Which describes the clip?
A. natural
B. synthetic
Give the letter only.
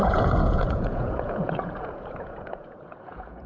B